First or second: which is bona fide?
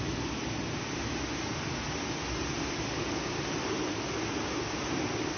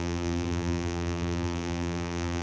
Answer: first